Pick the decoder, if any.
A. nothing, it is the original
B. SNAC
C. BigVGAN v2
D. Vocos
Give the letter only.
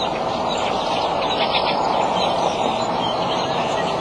A